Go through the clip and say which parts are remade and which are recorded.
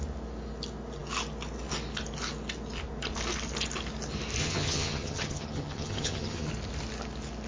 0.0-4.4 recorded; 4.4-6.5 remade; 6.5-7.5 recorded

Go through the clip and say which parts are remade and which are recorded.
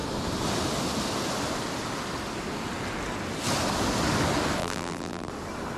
0.0-4.6 recorded; 4.6-5.3 remade; 5.3-5.8 recorded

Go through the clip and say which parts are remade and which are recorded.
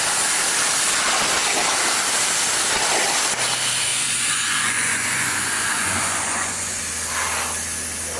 0.0-3.9 recorded; 3.9-6.8 remade; 6.8-8.2 recorded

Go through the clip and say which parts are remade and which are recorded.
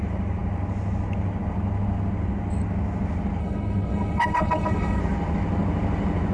0.0-3.4 recorded; 3.4-5.0 remade; 5.0-6.3 recorded